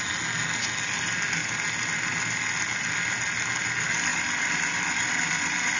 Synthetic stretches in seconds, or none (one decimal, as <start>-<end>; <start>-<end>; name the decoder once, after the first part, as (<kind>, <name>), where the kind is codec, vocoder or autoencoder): 4.1-5.1 (vocoder, BigVGAN v2)